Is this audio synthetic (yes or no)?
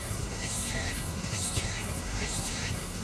yes